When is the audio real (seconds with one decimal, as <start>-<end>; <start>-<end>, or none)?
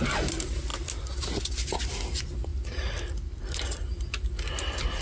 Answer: 0.0-5.0